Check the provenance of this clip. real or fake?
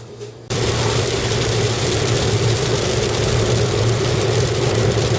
fake